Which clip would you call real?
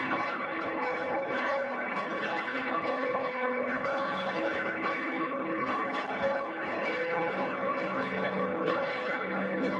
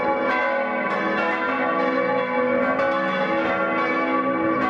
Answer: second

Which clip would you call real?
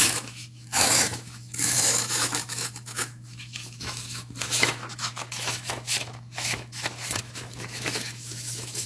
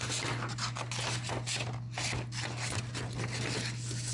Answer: second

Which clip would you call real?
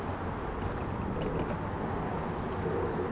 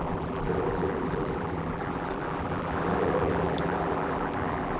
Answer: first